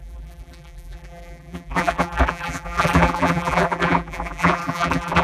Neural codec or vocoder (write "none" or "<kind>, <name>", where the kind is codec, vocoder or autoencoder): vocoder, BigVGAN v2